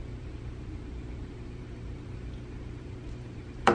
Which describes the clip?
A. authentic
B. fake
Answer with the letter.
B